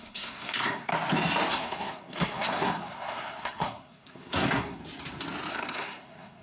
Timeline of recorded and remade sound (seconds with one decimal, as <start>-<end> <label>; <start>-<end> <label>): 0.0-0.9 remade; 0.9-1.5 recorded; 1.5-4.8 remade; 4.8-5.5 recorded; 5.5-6.4 remade